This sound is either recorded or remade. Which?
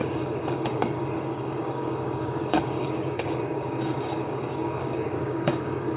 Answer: remade